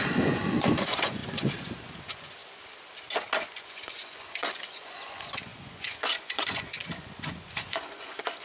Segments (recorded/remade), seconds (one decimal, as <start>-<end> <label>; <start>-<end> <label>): 0.0-2.4 remade; 2.4-3.4 recorded; 3.4-8.4 remade